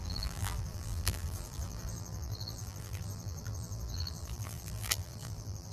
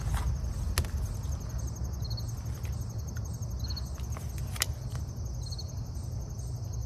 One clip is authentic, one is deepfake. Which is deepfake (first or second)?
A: first